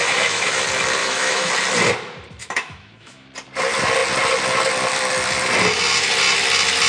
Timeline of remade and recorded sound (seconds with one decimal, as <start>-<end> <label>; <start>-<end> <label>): 0.0-0.6 remade; 0.6-1.0 recorded; 1.0-1.5 remade; 1.5-2.4 recorded; 2.4-3.3 remade; 3.3-6.9 recorded